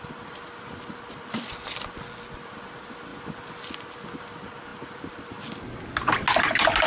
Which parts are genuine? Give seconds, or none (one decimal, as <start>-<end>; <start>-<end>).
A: 0.0-6.9

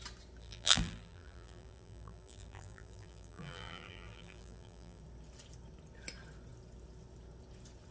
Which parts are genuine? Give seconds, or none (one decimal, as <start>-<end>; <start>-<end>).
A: 0.0-0.4; 5.0-7.9

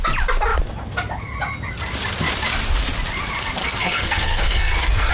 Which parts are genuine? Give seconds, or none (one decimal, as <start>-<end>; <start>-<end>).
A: 0.0-3.6

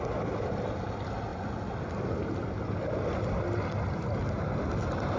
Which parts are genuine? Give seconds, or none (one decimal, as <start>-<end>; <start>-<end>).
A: 0.0-5.2

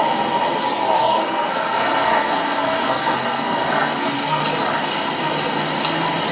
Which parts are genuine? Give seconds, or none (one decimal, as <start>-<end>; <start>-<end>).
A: 0.0-0.6; 4.4-6.3